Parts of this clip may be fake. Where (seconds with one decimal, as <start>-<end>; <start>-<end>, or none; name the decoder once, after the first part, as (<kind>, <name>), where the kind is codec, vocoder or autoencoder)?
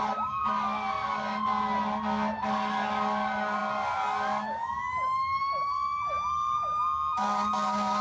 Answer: 0.0-1.5 (codec, DAC); 2.4-8.0